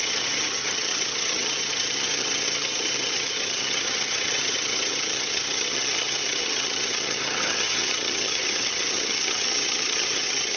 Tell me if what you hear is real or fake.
fake